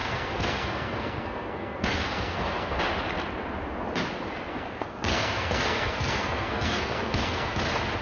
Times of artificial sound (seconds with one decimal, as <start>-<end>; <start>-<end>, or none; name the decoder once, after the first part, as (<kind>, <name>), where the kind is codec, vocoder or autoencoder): 0.0-2.8 (codec, SNAC); 4.5-7.6